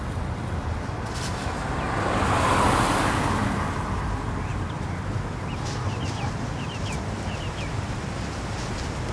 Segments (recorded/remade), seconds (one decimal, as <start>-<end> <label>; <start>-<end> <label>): 0.0-4.5 recorded; 4.5-8.6 remade; 8.6-9.1 recorded